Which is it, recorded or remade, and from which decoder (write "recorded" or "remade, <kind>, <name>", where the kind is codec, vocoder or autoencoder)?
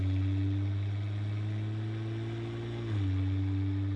recorded